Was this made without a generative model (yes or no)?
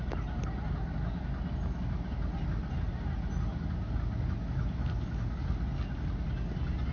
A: yes